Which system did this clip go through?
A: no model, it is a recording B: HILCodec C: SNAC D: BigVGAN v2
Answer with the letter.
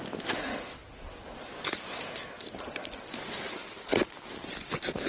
A